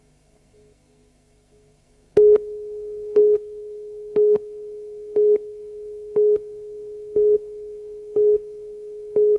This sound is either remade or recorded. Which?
remade